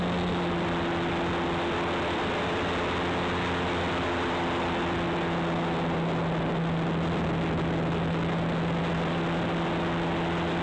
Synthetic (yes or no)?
no